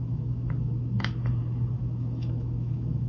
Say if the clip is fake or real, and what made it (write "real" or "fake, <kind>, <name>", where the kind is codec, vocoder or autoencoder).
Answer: fake, autoencoder, DAC-VAE